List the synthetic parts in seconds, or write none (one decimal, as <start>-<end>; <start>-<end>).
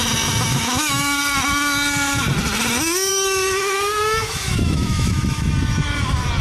0.5-1.2; 3.1-5.5